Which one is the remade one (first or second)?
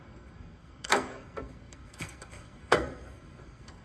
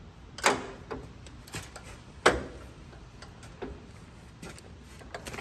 first